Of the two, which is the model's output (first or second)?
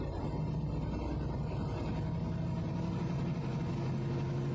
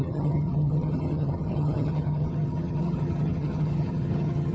second